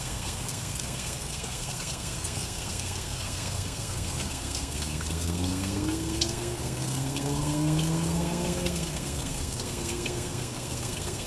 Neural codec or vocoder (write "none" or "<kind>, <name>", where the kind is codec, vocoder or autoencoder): codec, SNAC